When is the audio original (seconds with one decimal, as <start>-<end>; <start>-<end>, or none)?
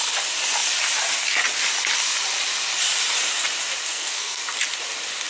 0.0-3.9; 4.4-5.3